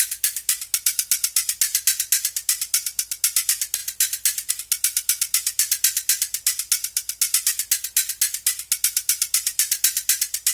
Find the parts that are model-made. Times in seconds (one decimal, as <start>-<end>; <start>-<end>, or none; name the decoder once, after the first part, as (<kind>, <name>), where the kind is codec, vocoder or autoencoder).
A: none